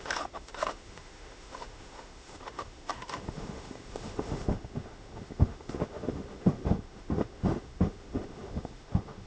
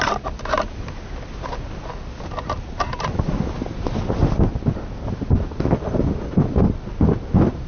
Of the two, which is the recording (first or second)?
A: second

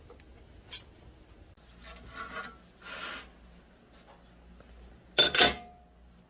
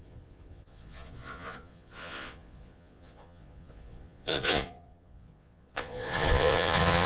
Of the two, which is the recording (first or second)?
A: first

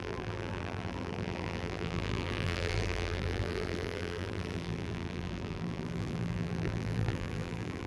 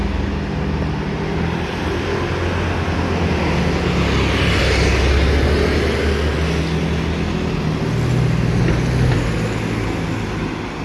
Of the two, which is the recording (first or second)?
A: second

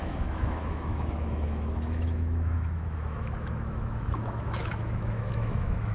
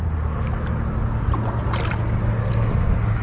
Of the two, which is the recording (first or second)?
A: second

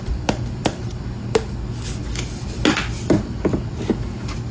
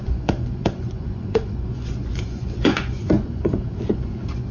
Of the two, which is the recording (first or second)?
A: first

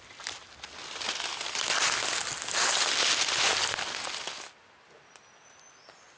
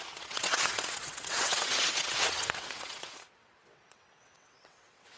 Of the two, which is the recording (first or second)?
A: first